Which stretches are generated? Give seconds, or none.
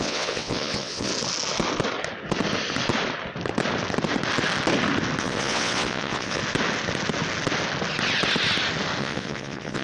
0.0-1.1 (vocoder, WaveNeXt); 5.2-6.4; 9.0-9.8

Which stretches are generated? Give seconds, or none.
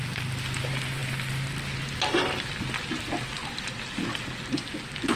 none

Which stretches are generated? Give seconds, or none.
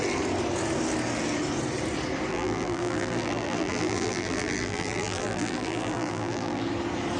2.3-6.6 (vocoder, BigVGAN v2)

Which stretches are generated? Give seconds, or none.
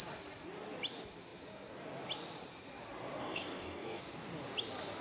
3.2-4.0 (codec, DAC)